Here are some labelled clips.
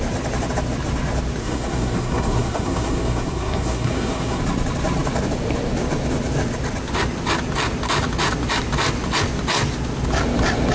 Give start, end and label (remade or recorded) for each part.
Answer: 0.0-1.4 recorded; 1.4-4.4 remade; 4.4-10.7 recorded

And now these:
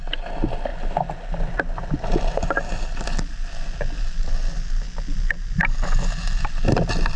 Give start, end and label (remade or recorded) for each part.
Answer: 0.0-7.2 recorded

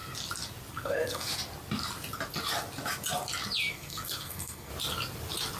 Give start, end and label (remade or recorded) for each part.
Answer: 0.0-0.7 recorded; 0.7-1.3 remade; 1.3-3.7 recorded; 3.7-4.7 remade; 4.7-5.6 recorded

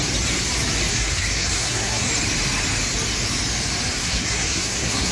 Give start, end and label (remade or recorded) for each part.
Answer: 0.0-0.9 recorded; 0.9-2.1 remade; 2.1-4.0 recorded; 4.0-5.1 remade

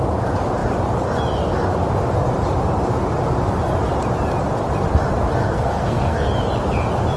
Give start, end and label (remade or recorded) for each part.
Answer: 0.0-5.4 recorded; 5.4-6.3 remade; 6.3-7.2 recorded

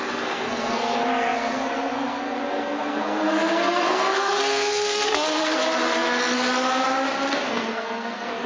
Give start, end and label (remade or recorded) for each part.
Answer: 0.0-5.6 remade; 5.6-7.3 recorded; 7.3-8.5 remade

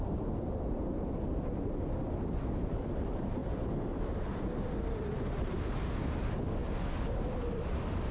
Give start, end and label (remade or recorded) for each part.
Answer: 0.0-8.1 recorded